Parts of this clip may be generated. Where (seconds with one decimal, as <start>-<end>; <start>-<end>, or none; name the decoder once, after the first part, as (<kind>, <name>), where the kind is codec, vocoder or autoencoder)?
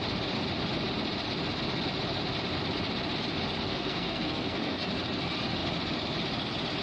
3.7-4.8 (codec, SNAC)